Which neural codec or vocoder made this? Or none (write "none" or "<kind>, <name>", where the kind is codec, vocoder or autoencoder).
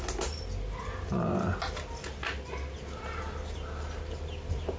none